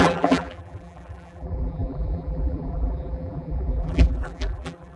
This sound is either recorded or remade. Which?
remade